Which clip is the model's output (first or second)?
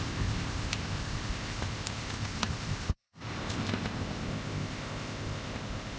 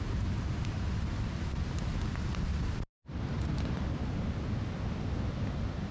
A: first